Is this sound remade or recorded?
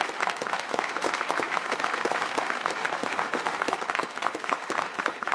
remade